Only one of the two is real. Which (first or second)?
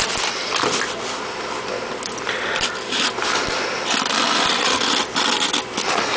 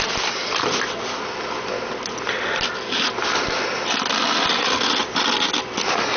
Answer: second